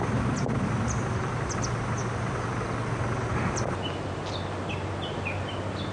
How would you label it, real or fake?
real